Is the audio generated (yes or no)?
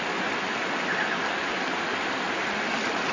no